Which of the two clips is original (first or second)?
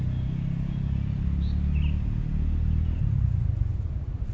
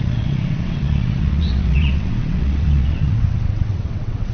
first